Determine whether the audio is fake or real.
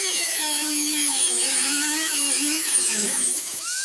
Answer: fake